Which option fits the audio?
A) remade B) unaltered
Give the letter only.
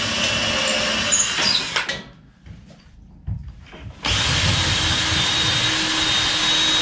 B